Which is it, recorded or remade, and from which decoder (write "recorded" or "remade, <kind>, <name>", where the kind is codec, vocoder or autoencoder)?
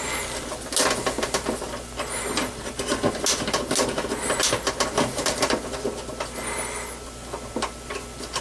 recorded